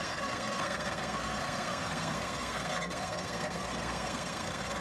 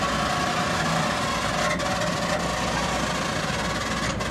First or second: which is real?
second